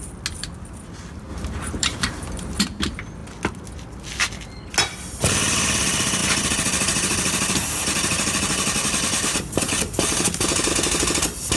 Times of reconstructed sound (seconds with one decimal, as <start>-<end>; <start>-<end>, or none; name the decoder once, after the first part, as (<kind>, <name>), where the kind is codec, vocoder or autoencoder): 1.3-2.6 (vocoder, BigVGAN v2); 6.2-10.7